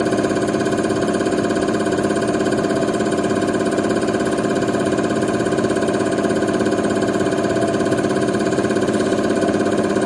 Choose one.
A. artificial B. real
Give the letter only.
A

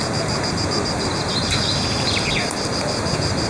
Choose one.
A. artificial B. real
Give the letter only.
A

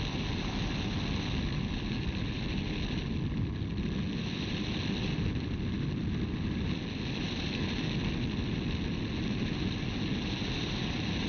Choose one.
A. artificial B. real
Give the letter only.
B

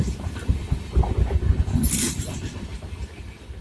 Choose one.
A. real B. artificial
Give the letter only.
A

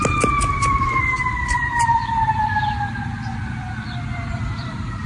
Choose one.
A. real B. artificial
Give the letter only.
B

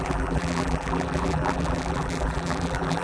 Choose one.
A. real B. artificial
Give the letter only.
B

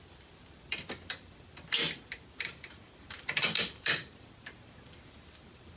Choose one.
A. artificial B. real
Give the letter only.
A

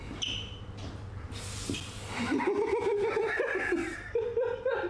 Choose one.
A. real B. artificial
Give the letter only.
A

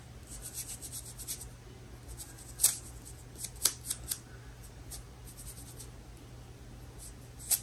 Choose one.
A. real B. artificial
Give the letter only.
A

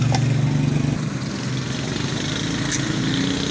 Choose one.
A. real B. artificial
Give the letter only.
A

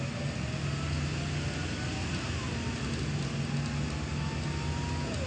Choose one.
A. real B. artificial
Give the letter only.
A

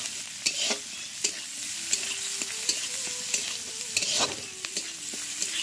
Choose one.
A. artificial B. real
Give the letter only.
B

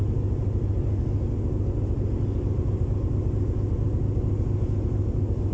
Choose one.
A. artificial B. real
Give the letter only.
B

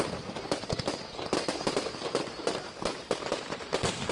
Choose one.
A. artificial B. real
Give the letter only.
A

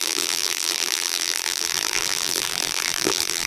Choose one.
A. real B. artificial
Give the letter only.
B